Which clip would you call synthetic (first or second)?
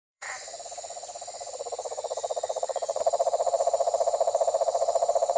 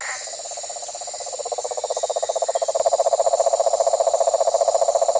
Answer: first